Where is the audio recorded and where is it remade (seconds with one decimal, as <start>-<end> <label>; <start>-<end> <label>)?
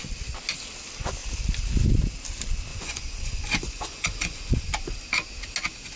0.0-2.7 recorded; 2.7-4.7 remade; 4.7-6.0 recorded